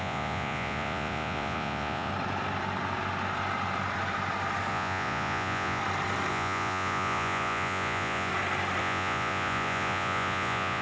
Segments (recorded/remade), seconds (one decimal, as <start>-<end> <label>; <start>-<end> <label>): 0.0-2.1 remade; 2.1-4.7 recorded; 4.7-5.8 remade; 5.8-6.3 recorded; 6.3-8.3 remade; 8.3-8.8 recorded; 8.8-10.8 remade

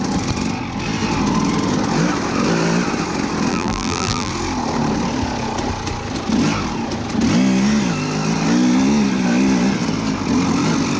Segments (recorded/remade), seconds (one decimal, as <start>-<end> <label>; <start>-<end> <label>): 0.0-3.5 recorded; 3.5-4.3 remade; 4.3-11.0 recorded

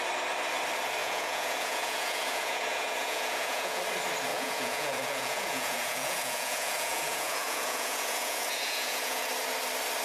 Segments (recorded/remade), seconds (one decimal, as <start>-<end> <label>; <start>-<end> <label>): 0.0-1.0 recorded; 1.0-3.8 remade; 3.8-4.3 recorded; 4.3-9.3 remade; 9.3-10.0 recorded

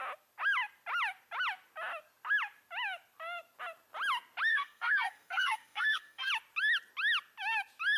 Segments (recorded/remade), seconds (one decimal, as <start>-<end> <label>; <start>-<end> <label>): 0.0-4.5 recorded; 4.5-6.3 remade; 6.3-8.0 recorded

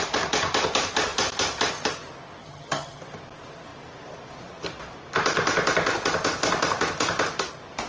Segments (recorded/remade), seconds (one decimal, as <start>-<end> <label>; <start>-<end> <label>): 0.0-2.4 recorded; 2.4-3.0 remade; 3.0-7.9 recorded

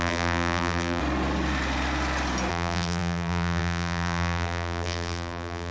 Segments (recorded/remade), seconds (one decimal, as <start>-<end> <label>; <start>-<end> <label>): 0.0-1.0 remade; 1.0-2.5 recorded; 2.5-5.7 remade

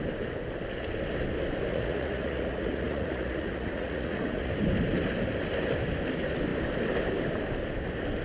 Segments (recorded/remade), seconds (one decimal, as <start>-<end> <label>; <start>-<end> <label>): 0.0-1.7 recorded; 1.7-4.5 remade; 4.5-8.2 recorded

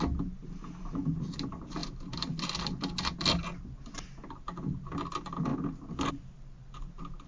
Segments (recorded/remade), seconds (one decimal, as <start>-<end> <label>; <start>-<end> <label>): 0.0-7.3 recorded